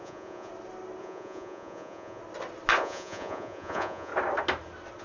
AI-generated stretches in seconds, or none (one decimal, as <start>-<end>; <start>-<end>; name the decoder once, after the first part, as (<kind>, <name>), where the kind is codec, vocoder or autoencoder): 0.0-0.5 (vocoder, Vocos); 1.0-2.2; 2.8-4.1